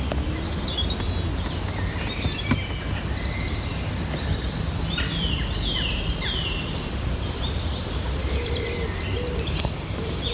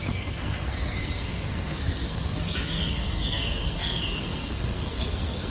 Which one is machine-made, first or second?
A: second